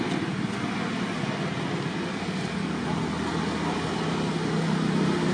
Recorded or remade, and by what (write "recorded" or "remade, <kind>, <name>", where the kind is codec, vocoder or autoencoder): recorded